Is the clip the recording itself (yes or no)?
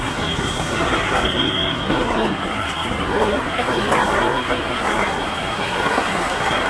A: no